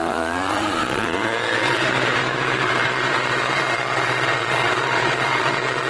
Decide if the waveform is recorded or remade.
remade